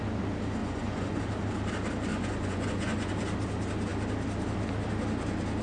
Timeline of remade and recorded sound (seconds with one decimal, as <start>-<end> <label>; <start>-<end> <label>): 0.0-0.6 recorded; 0.6-1.2 remade; 1.2-2.1 recorded; 2.1-3.1 remade; 3.1-5.6 recorded